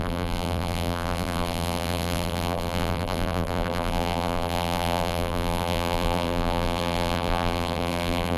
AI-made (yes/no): yes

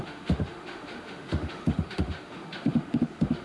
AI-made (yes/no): yes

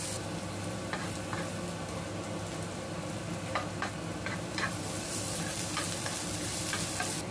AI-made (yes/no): no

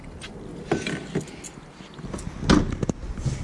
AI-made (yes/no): no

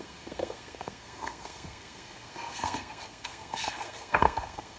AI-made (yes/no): yes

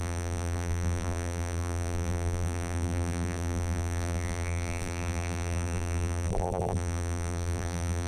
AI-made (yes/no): yes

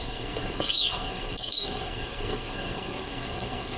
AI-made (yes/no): yes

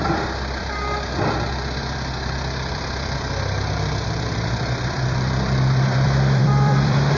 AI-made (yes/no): yes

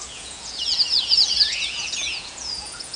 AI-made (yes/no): yes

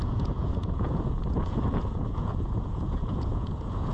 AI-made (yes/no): yes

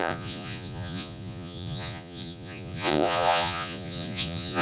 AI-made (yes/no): yes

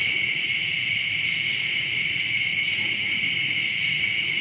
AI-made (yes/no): yes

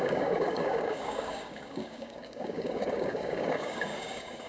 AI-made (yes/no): yes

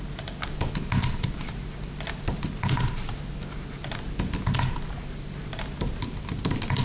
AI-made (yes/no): no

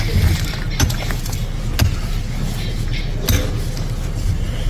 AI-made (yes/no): no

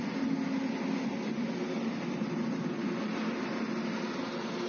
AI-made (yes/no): no